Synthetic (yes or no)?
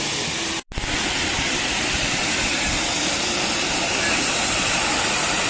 no